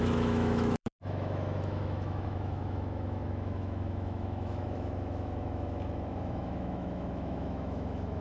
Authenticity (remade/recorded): remade